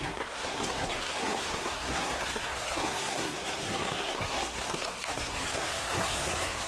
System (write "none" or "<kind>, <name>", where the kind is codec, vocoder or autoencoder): codec, SNAC